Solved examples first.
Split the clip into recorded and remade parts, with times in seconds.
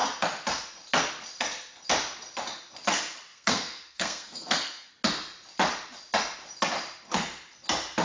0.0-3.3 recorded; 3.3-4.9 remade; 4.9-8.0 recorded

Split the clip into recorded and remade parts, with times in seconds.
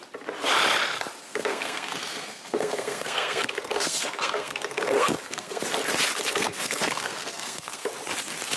0.0-1.2 recorded; 1.2-5.6 remade; 5.6-6.3 recorded; 6.3-7.9 remade; 7.9-8.6 recorded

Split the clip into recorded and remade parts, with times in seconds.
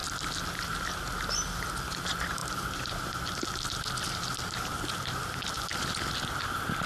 0.0-6.9 recorded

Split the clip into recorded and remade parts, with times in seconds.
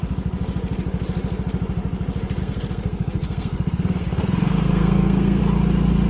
0.0-2.4 recorded; 2.4-5.4 remade; 5.4-6.1 recorded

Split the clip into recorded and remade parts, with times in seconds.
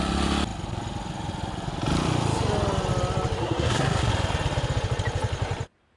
0.0-3.4 recorded; 3.4-4.1 remade; 4.1-6.0 recorded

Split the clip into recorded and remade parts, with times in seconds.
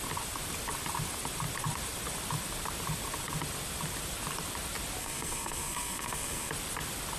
0.0-5.0 recorded; 5.0-6.5 remade; 6.5-7.2 recorded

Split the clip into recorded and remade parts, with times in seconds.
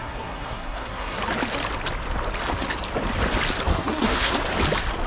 0.0-1.2 remade; 1.2-3.7 recorded; 3.7-4.3 remade; 4.3-5.1 recorded